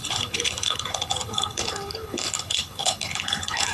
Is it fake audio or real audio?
fake